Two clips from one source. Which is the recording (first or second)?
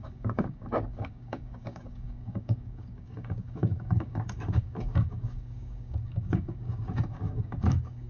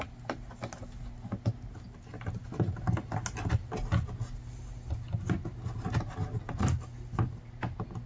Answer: second